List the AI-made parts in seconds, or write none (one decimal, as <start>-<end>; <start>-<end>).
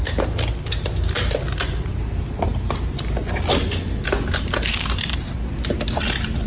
none